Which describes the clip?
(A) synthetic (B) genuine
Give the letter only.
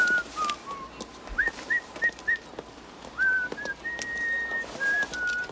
B